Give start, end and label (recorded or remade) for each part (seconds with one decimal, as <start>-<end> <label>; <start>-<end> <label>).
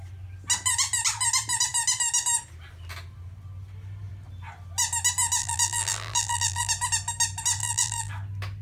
0.0-5.4 recorded; 5.4-6.7 remade; 6.7-7.6 recorded; 7.6-8.1 remade; 8.1-8.6 recorded